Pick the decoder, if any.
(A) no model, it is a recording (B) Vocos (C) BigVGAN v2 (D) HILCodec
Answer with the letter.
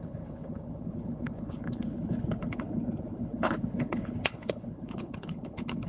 D